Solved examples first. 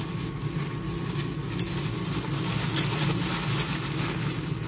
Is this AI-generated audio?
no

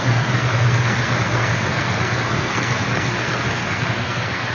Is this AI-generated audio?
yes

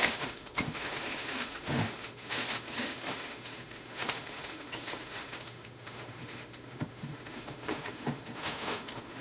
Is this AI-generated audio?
yes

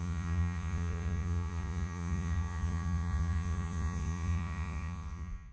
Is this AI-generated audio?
yes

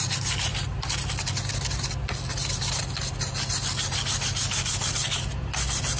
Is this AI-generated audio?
no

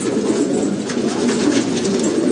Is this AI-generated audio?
yes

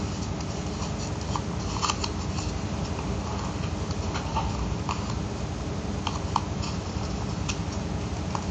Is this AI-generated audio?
no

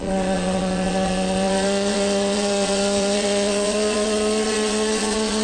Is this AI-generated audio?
yes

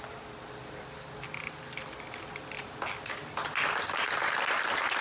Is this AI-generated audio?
no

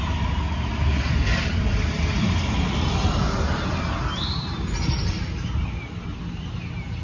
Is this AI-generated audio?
no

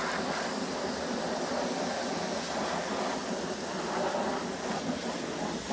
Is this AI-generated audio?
no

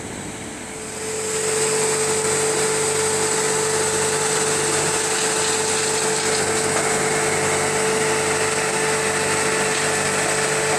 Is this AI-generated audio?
no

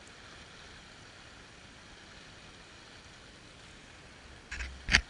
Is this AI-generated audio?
no